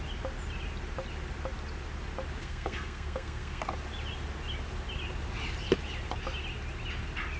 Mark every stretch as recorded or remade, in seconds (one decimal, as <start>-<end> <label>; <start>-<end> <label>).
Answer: 0.0-2.4 recorded; 2.4-3.6 remade; 3.6-7.4 recorded